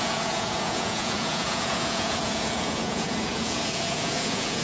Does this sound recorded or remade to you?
remade